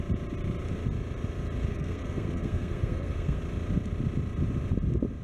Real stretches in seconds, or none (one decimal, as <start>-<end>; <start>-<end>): 0.0-1.7; 3.4-5.2